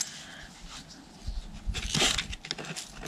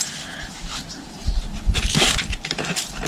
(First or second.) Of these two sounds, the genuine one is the first